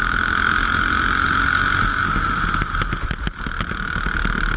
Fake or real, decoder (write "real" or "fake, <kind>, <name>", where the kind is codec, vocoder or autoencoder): real